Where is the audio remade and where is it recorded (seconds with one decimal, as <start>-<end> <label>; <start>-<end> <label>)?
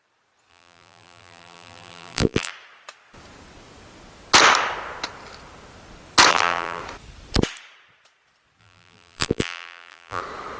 0.0-0.5 recorded; 0.5-2.5 remade; 2.5-6.3 recorded; 6.3-6.8 remade; 6.8-8.6 recorded; 8.6-10.2 remade; 10.2-10.6 recorded